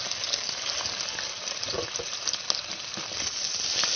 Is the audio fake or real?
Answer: real